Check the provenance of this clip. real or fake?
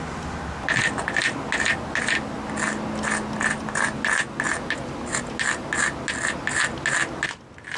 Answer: real